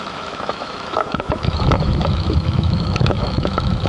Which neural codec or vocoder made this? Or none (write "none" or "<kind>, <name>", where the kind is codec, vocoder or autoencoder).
autoencoder, DAC-VAE